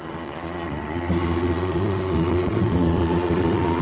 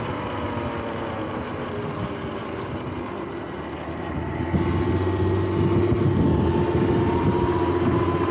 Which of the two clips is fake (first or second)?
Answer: first